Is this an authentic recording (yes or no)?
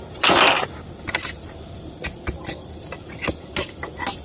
yes